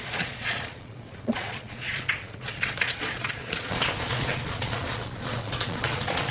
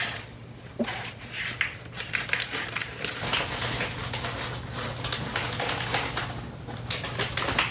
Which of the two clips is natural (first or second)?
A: second